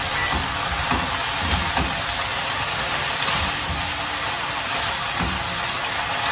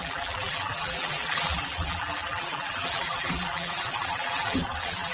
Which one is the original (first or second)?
first